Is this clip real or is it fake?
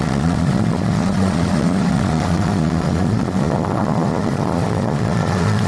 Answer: fake